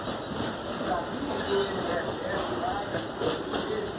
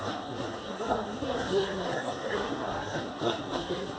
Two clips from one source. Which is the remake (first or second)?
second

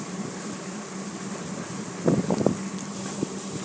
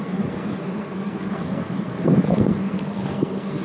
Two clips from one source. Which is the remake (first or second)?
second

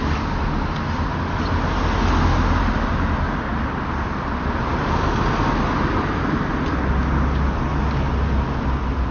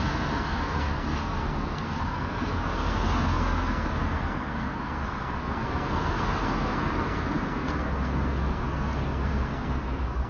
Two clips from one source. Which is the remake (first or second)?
second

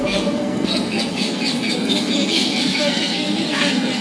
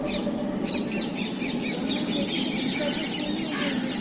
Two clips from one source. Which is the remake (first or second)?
first